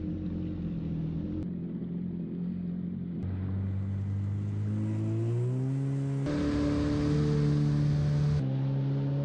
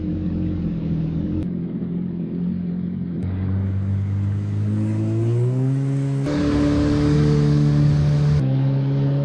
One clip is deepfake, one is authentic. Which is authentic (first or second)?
first